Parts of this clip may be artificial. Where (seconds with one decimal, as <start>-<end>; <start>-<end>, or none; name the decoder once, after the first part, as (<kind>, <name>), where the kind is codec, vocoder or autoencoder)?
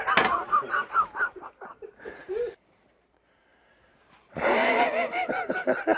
1.7-5.3 (vocoder, BigVGAN v2)